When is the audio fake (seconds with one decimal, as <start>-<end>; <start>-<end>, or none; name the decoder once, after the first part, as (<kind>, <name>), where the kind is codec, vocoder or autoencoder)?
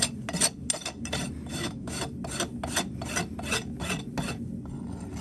1.5-2.0 (autoencoder, DAC-VAE)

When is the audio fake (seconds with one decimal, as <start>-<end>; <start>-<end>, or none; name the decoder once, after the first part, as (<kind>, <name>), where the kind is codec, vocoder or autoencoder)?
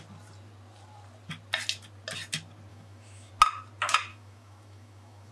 2.7-3.3 (autoencoder, DAC-VAE); 4.1-5.3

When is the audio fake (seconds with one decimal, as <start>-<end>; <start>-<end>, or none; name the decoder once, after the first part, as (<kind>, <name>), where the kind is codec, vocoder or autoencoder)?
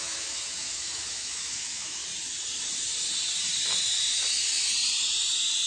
0.0-2.0 (autoencoder, DAC-VAE)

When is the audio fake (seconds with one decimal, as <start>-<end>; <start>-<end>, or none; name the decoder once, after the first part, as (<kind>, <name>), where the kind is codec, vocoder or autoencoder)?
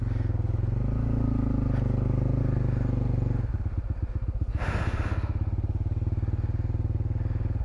none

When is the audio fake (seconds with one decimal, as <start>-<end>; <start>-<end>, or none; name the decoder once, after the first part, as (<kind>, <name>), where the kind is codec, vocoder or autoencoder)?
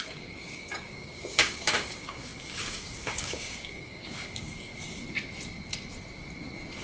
0.0-4.7 (codec, DAC)